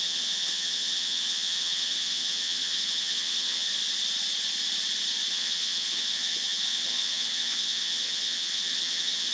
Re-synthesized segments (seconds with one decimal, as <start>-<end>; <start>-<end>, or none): 0.0-3.7; 5.3-9.3